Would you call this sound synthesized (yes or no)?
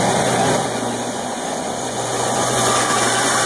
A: yes